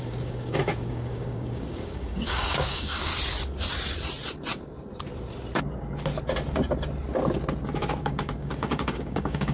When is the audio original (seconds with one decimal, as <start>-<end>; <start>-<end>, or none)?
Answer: 3.1-8.0